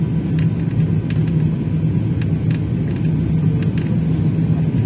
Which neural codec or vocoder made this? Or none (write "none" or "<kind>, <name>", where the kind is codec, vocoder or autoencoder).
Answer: none